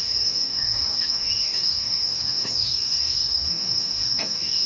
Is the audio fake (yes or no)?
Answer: yes